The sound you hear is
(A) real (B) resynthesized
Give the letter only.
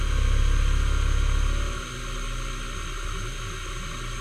A